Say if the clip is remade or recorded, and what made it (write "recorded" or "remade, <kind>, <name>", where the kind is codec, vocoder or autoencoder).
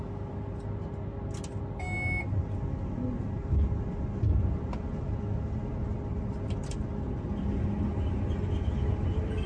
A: recorded